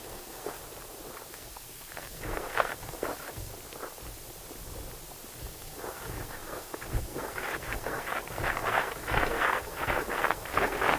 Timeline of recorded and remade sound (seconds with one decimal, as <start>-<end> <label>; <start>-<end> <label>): 0.0-0.6 remade; 0.6-1.3 recorded; 1.3-3.5 remade; 3.5-5.4 recorded; 5.4-11.0 remade